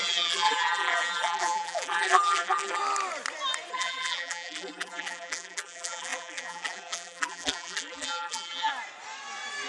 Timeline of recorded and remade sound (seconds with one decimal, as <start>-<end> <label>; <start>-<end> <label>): 0.0-2.8 remade; 2.8-3.7 recorded; 3.7-8.7 remade; 8.7-9.7 recorded